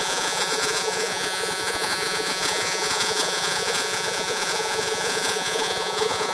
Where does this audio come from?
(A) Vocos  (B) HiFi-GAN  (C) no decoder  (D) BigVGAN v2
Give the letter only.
A